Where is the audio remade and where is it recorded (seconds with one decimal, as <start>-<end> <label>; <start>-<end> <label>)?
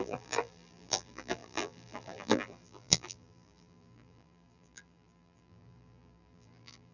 0.0-6.9 remade